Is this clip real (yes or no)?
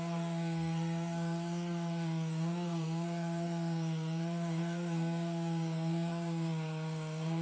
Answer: no